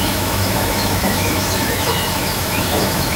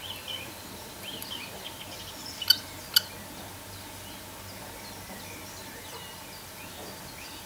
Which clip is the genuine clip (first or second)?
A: second